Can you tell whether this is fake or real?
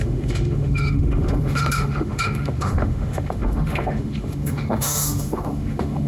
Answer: fake